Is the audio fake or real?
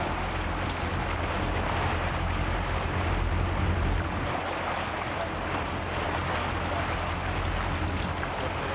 real